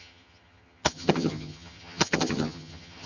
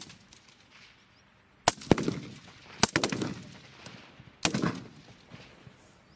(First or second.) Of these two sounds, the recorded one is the second